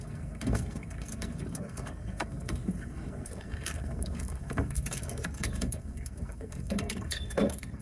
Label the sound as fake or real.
fake